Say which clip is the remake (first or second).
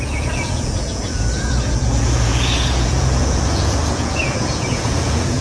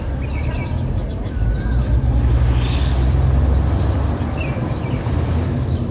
first